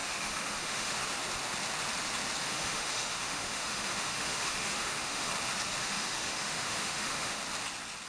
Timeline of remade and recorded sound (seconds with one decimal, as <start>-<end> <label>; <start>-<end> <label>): 0.0-1.0 remade; 1.0-2.4 recorded; 2.4-5.3 remade; 5.3-5.8 recorded; 5.8-7.4 remade; 7.4-8.1 recorded